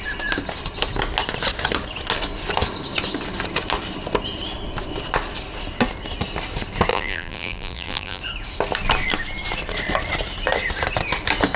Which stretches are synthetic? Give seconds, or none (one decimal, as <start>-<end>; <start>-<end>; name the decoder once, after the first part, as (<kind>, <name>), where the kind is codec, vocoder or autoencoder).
6.9-8.2 (vocoder, BigVGAN v2)

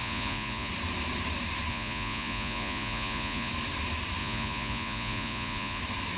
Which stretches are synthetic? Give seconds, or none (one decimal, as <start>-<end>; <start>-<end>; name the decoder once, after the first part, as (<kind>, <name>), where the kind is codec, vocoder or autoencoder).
0.0-0.7 (vocoder, Vocos); 1.7-3.5; 4.2-5.8